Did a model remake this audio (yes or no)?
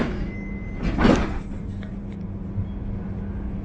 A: no